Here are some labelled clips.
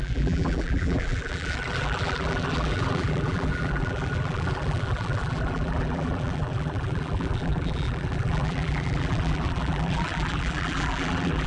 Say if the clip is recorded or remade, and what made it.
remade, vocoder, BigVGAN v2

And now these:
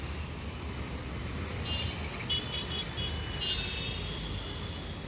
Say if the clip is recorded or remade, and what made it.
recorded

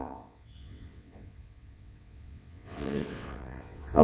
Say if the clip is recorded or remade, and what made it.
remade, vocoder, WaveNeXt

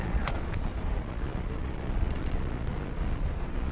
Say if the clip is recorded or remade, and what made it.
remade, vocoder, Vocos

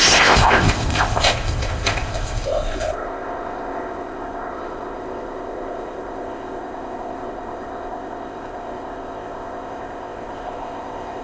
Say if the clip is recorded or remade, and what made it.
remade, codec, ZipCodec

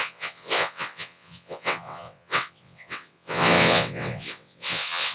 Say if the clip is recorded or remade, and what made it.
remade, vocoder, WaveNeXt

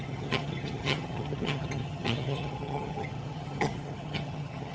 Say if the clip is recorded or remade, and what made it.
remade, vocoder, HiFi-GAN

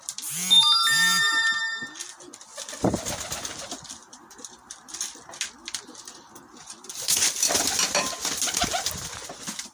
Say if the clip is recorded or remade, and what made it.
recorded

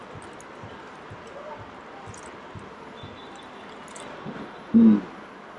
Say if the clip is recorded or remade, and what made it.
recorded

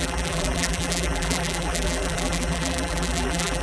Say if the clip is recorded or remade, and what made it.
remade, vocoder, BigVGAN v2